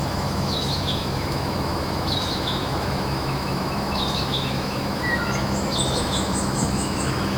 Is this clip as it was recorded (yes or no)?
no